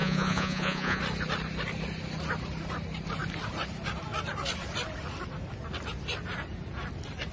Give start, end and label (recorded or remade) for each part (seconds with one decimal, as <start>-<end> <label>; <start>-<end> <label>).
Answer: 0.0-1.0 remade; 1.0-7.3 recorded